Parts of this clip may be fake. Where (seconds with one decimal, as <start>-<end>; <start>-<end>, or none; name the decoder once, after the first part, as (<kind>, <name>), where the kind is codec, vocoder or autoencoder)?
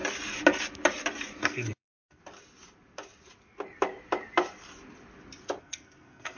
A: 1.4-2.2 (codec, SNAC); 5.6-6.4